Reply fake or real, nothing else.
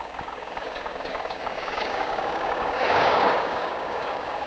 fake